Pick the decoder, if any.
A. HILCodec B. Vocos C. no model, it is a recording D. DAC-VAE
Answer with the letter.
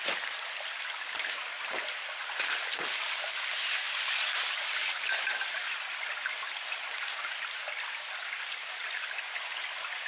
C